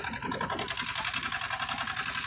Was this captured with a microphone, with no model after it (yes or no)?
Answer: yes